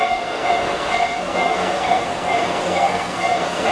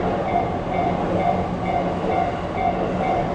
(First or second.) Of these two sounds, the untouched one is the second